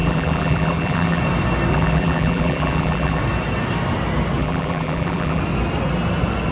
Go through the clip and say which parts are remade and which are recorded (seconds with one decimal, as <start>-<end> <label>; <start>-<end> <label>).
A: 0.0-1.2 remade; 1.2-1.7 recorded; 1.7-3.2 remade; 3.2-4.4 recorded; 4.4-5.4 remade; 5.4-6.5 recorded